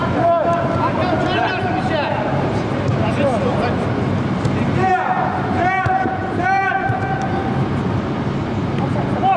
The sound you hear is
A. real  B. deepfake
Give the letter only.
A